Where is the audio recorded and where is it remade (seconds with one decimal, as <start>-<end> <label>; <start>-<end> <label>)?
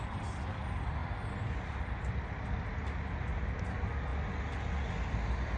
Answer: 0.0-5.6 recorded